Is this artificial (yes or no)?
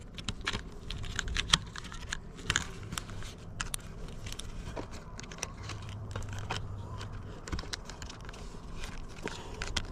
yes